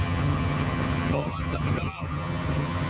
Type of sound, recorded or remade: remade